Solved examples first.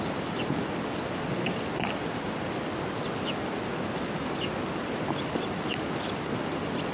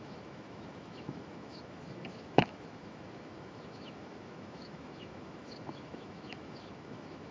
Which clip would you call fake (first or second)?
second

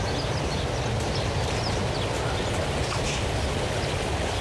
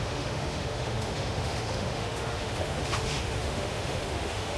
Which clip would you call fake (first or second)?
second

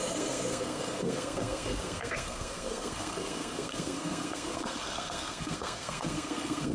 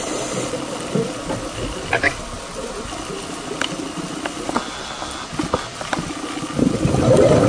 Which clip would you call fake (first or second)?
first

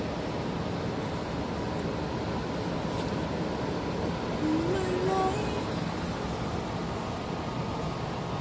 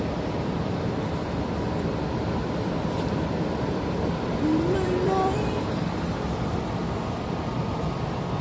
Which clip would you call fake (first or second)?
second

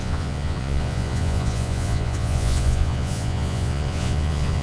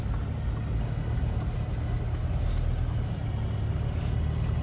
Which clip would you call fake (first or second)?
first